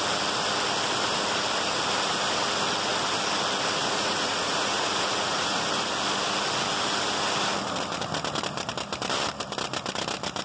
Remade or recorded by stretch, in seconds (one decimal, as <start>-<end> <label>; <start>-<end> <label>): 0.0-3.8 recorded; 3.8-5.6 remade; 5.6-10.4 recorded